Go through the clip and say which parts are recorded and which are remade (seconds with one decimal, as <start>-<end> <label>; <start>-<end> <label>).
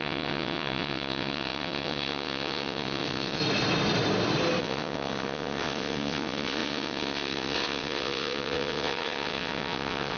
0.0-3.4 remade; 3.4-4.6 recorded; 4.6-10.2 remade